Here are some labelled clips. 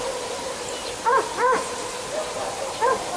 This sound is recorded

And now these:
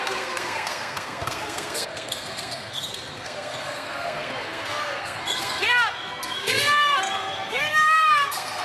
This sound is remade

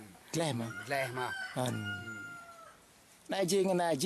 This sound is recorded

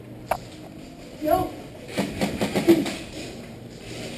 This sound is recorded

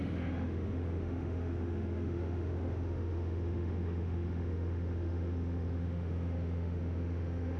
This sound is remade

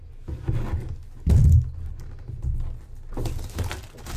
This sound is recorded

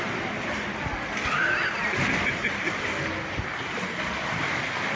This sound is recorded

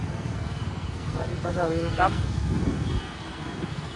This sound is remade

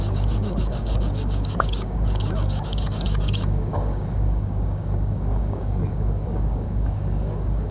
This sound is remade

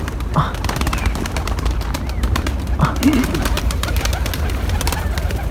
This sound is recorded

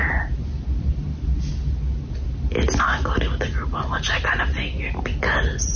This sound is recorded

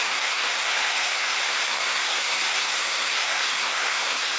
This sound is remade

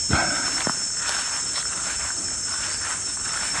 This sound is recorded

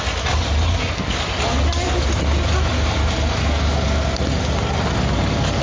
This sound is recorded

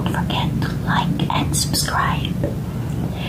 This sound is recorded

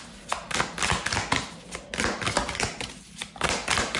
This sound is recorded